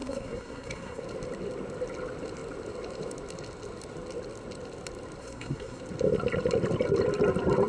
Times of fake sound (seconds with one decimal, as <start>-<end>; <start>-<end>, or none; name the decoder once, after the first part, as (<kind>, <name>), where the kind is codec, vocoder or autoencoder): 0.0-1.0 (codec, SNAC); 5.2-5.8